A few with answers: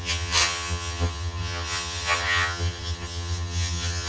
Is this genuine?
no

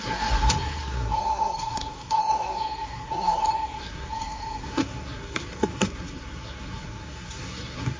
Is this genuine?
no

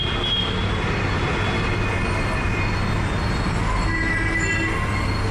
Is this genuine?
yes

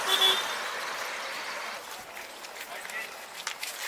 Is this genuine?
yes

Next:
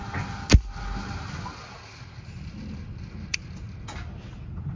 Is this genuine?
yes